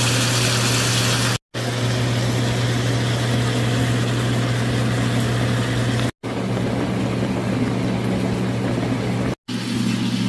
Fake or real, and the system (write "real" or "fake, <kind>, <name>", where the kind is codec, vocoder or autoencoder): real